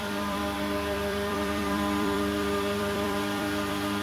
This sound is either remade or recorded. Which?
remade